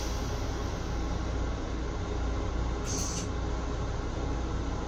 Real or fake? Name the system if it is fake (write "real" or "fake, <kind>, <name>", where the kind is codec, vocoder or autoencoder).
real